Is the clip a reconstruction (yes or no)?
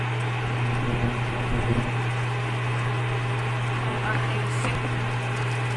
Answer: no